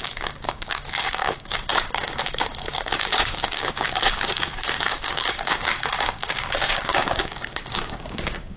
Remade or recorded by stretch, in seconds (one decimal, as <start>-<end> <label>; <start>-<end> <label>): 0.0-8.6 remade